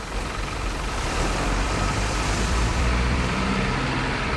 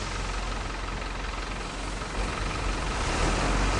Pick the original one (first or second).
second